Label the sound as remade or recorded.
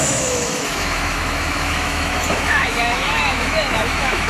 remade